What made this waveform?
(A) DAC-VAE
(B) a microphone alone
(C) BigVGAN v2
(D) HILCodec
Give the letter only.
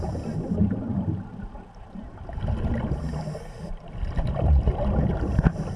C